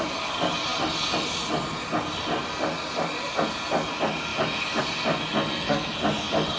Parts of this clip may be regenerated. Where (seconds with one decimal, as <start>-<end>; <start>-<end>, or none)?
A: 5.5-6.0